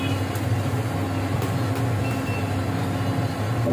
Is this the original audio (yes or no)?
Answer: yes